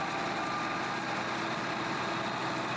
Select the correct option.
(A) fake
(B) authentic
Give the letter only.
B